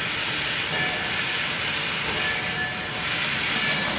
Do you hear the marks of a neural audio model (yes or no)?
no